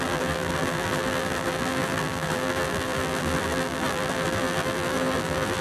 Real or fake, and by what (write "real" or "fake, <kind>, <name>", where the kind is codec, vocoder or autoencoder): fake, vocoder, BigVGAN v2